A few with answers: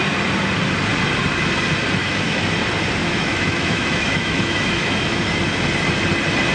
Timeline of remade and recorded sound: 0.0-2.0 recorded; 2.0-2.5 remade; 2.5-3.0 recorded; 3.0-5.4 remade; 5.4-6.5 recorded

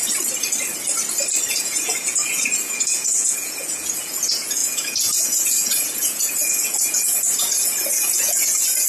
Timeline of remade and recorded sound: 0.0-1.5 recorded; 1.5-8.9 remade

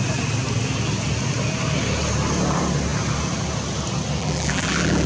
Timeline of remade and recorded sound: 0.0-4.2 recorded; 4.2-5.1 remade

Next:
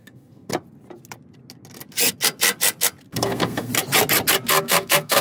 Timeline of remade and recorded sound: 0.0-0.5 remade; 0.5-3.1 recorded; 3.1-3.7 remade; 3.7-4.6 recorded; 4.6-5.2 remade

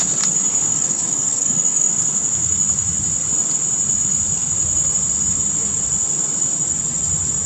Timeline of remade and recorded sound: 0.0-0.7 recorded; 0.7-1.9 remade; 1.9-7.5 recorded

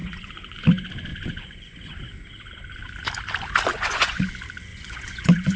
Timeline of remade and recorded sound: 0.0-0.6 remade; 0.6-1.1 recorded; 1.1-2.0 remade; 2.0-3.7 recorded; 3.7-4.3 remade; 4.3-4.7 recorded; 4.7-5.6 remade

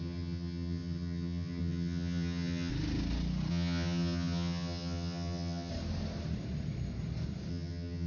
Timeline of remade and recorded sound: 0.0-2.7 remade; 2.7-3.5 recorded; 3.5-5.7 remade; 5.7-7.5 recorded; 7.5-8.1 remade